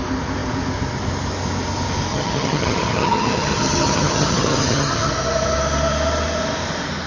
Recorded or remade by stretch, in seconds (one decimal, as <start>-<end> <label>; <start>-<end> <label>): 0.0-2.1 recorded; 2.1-5.1 remade; 5.1-7.1 recorded